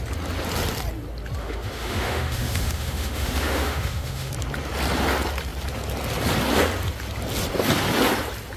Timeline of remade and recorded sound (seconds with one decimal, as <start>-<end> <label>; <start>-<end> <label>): 0.0-1.4 recorded; 1.4-4.3 remade; 4.3-8.6 recorded